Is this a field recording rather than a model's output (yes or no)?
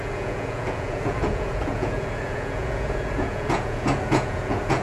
no